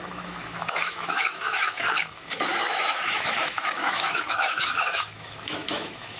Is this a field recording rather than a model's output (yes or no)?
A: no